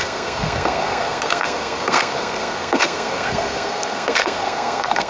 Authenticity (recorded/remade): remade